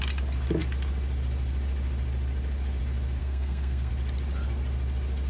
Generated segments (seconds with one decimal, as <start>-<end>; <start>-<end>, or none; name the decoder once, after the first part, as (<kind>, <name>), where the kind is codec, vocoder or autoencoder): 3.2-3.9 (codec, SNAC)